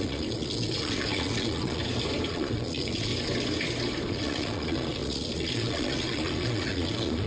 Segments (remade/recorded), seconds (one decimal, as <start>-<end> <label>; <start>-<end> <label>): 0.0-1.8 remade; 1.8-2.3 recorded; 2.3-3.1 remade; 3.1-4.1 recorded; 4.1-7.3 remade

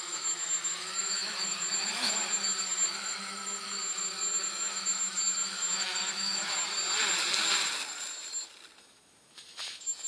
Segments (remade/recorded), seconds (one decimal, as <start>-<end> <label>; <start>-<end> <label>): 0.0-6.6 remade; 6.6-8.8 recorded; 8.8-10.1 remade

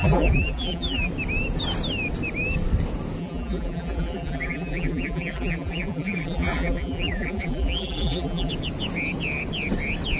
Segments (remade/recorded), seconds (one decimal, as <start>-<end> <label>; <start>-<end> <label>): 0.0-1.1 remade; 1.1-3.2 recorded; 3.2-8.5 remade; 8.5-10.2 recorded

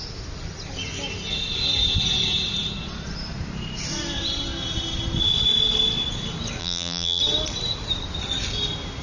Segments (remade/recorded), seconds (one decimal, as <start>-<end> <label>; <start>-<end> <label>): 0.0-6.6 recorded; 6.6-7.2 remade; 7.2-9.0 recorded

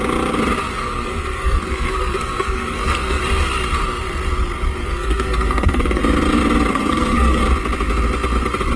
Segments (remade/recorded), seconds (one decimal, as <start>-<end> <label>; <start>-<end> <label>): 0.0-0.7 recorded; 0.7-3.2 remade; 3.2-4.8 recorded; 4.8-6.0 remade; 6.0-6.7 recorded; 6.7-7.4 remade; 7.4-8.8 recorded

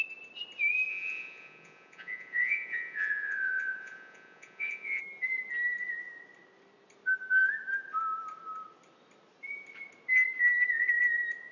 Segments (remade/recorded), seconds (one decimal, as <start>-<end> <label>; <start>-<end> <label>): 0.0-0.9 recorded; 0.9-5.0 remade; 5.0-11.5 recorded